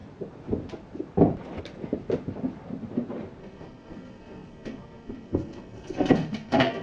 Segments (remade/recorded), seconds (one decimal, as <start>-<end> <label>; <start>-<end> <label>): 0.0-3.4 recorded; 3.4-6.8 remade